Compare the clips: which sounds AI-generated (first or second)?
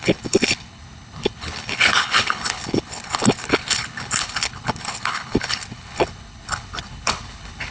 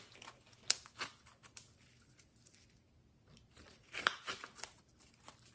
first